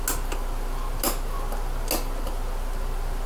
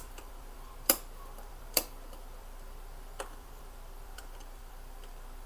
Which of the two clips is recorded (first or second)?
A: first